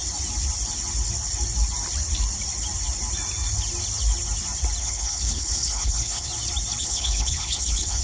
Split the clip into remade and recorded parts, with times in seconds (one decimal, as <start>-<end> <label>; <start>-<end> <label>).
0.0-4.8 recorded; 4.8-6.3 remade; 6.3-6.8 recorded; 6.8-8.0 remade